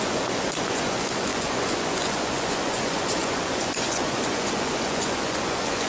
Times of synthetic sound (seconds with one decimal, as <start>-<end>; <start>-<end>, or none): 0.0-5.9